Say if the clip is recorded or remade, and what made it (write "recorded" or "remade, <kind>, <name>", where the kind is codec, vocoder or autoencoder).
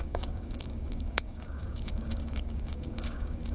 remade, codec, DAC